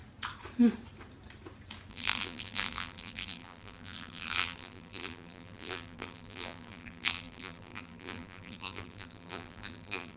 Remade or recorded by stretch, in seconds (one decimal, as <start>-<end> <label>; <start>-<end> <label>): 0.0-1.9 recorded; 1.9-10.2 remade

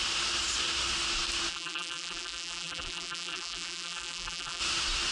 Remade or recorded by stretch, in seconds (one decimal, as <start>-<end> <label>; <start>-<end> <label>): 0.0-1.5 recorded; 1.5-4.6 remade; 4.6-5.1 recorded

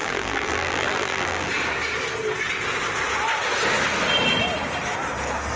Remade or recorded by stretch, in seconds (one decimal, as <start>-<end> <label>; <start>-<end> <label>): 0.0-1.5 remade; 1.5-5.6 recorded